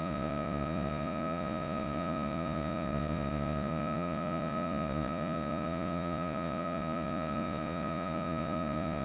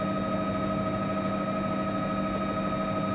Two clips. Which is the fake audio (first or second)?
first